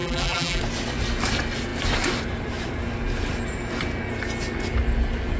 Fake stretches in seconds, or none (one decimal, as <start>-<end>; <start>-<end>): 0.0-0.6